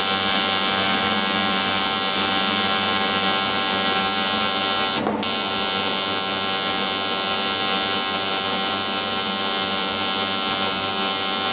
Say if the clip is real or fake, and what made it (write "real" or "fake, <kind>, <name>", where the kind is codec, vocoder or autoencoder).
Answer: real